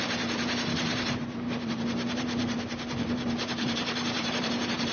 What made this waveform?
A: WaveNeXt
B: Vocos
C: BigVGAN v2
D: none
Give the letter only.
C